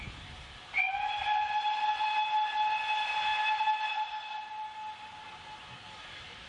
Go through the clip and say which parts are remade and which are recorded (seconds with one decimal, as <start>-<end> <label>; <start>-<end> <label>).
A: 0.0-6.5 recorded